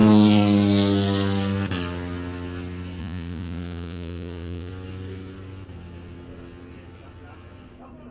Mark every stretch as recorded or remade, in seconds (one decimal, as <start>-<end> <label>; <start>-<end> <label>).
0.0-3.0 recorded; 3.0-4.7 remade; 4.7-8.1 recorded